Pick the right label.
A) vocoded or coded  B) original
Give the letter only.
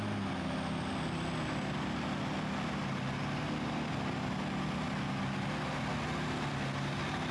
B